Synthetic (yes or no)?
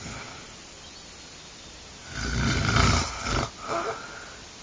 no